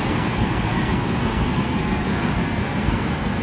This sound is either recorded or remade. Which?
remade